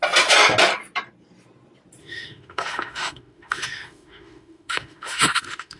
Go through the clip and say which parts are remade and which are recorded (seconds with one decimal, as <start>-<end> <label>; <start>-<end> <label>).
0.0-2.0 recorded; 2.0-5.8 remade